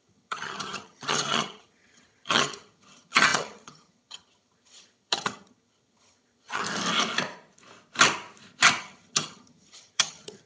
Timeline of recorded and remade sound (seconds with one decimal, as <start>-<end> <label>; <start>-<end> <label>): 0.0-6.6 remade; 6.6-8.8 recorded; 8.8-10.5 remade